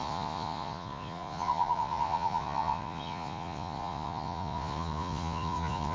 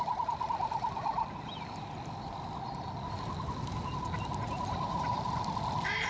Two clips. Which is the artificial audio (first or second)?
first